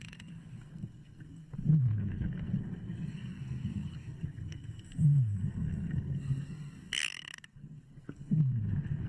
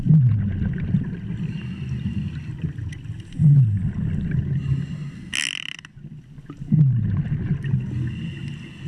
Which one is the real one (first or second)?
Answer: second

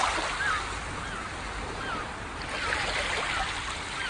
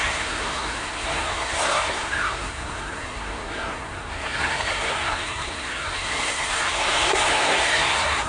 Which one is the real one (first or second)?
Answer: first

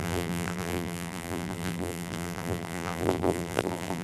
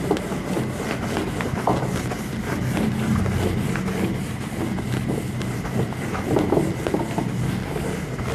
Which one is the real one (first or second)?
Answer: second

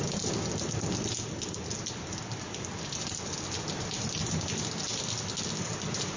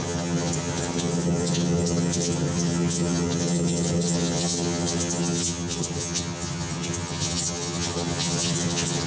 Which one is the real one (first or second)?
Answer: first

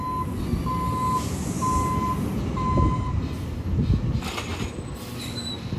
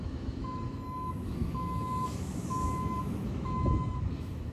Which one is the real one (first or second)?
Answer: first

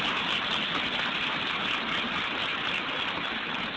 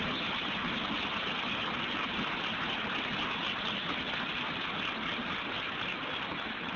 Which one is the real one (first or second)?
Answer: second